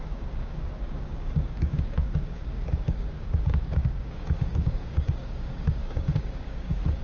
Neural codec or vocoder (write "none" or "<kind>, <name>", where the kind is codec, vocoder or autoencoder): codec, DAC